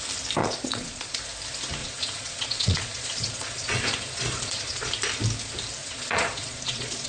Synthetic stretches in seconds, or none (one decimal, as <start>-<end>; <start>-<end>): 0.4-1.2; 1.8-4.9; 5.8-7.1